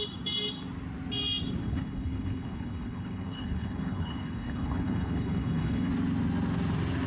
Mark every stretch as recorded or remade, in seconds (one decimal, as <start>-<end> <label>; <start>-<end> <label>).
0.0-1.6 recorded; 1.6-5.9 remade; 5.9-7.1 recorded